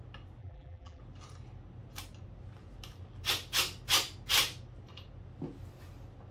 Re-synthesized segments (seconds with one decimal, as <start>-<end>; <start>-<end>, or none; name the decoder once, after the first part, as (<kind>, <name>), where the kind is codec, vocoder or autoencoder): 0.4-1.0 (vocoder, BigVGAN v2)